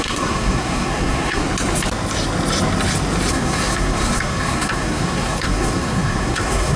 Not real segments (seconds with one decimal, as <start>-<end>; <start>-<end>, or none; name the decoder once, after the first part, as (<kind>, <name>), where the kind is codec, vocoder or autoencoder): 0.0-1.4 (codec, SNAC); 3.3-6.8